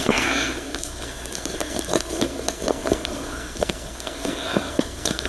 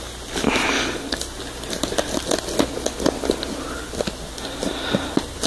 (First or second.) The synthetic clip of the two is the first